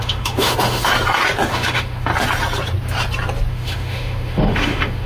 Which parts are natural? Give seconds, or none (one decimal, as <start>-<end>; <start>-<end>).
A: 0.9-1.5; 2.1-3.5